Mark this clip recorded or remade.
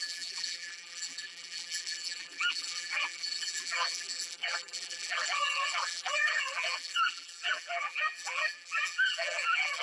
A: remade